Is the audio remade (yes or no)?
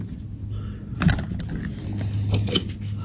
no